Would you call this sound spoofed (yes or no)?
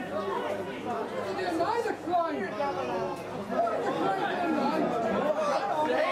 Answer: no